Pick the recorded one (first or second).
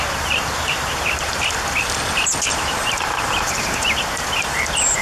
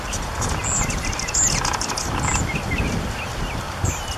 second